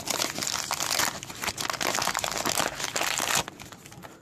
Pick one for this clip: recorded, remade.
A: recorded